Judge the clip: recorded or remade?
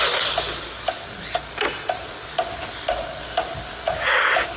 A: recorded